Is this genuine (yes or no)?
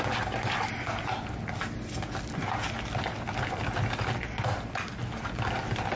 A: yes